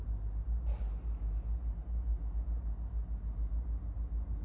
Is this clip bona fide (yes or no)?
yes